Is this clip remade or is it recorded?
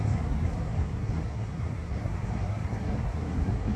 remade